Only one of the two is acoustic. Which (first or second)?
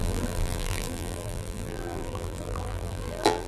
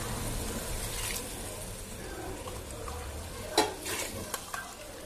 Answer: second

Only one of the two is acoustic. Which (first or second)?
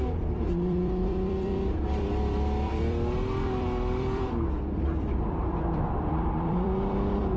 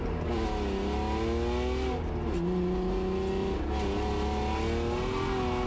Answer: second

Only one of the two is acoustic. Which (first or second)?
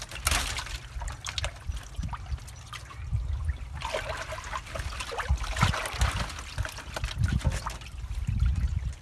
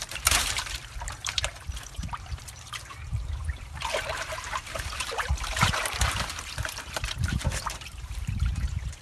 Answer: first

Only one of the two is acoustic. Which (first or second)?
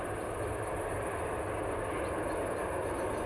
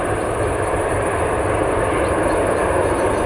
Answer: first